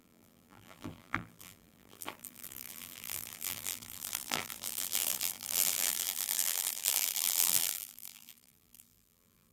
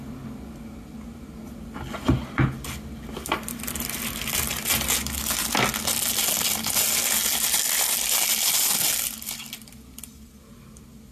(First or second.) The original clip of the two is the second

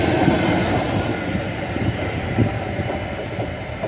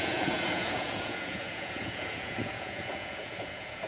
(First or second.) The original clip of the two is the first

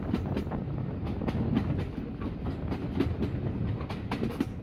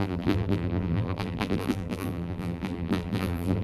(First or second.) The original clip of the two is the first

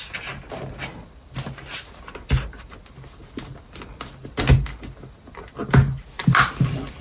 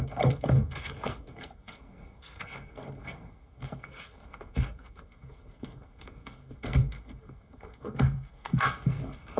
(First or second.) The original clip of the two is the first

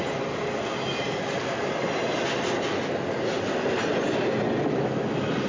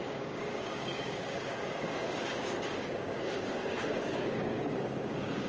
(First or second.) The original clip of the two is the first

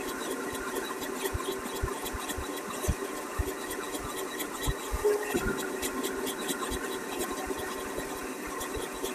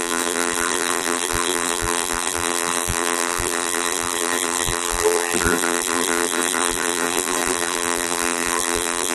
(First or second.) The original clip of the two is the first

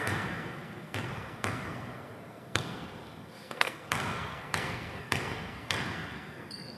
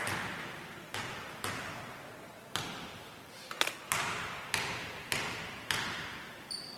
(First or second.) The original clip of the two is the second